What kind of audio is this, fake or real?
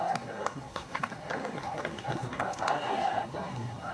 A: fake